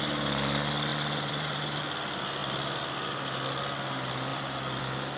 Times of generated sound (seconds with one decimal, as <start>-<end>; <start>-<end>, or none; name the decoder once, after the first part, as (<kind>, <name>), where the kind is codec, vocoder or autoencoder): 0.9-1.8 (vocoder, BigVGAN v2); 4.3-4.8